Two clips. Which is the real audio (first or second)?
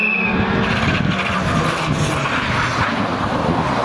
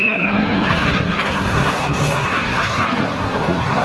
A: first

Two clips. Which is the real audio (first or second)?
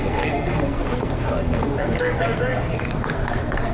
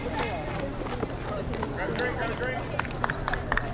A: second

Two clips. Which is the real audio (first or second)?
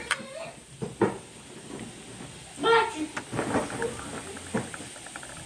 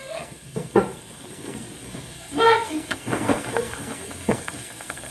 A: first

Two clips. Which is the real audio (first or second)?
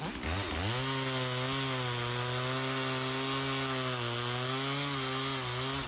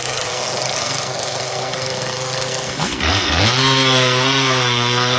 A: first